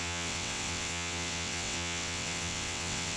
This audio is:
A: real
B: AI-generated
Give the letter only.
B